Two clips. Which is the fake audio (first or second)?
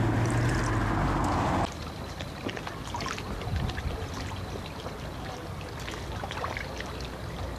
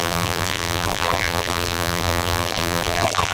second